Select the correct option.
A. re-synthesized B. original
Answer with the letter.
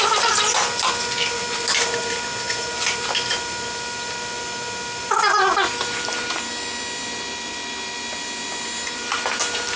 B